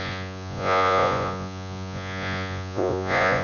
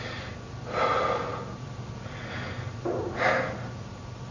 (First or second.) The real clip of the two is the second